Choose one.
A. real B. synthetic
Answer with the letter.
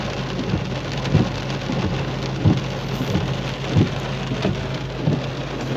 A